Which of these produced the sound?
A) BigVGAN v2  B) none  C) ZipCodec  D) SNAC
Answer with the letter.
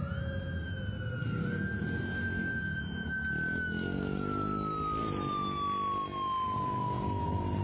B